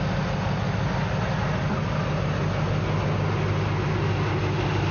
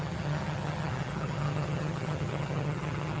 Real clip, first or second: first